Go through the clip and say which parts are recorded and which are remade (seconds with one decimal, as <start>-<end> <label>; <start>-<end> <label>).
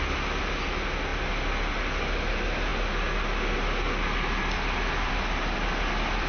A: 0.0-6.3 recorded